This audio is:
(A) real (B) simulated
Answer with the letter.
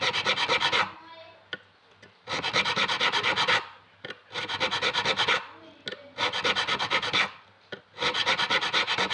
A